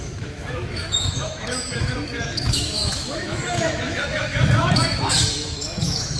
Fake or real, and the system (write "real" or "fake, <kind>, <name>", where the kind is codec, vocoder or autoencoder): fake, autoencoder, DAC-VAE